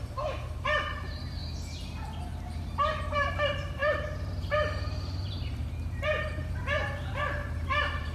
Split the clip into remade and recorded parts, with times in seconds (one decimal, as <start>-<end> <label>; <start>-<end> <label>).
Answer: 0.0-1.4 remade; 1.4-2.9 recorded; 2.9-8.1 remade